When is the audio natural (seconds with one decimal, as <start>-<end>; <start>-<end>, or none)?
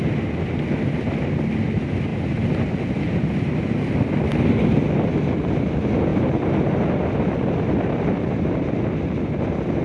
0.0-9.8